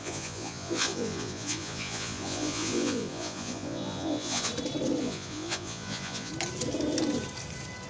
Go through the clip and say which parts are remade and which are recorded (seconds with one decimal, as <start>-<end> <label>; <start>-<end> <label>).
0.0-4.5 remade; 4.5-5.0 recorded; 5.0-6.3 remade; 6.3-7.9 recorded